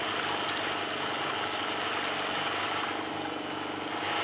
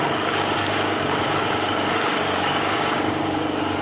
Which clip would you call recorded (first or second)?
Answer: first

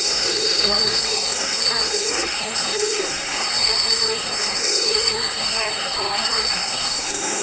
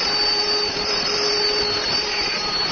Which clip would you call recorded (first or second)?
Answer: second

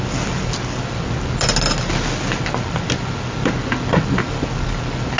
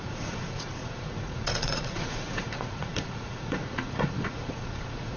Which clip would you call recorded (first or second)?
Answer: first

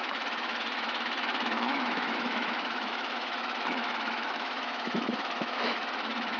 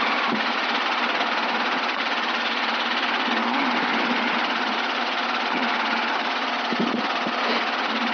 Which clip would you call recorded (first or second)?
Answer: second